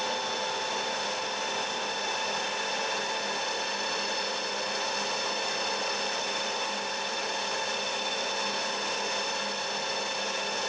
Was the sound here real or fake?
real